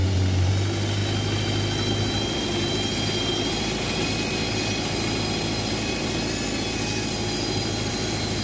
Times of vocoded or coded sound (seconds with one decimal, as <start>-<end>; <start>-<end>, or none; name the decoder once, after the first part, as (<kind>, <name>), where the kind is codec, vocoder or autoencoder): 0.0-0.5 (vocoder, BigVGAN v2)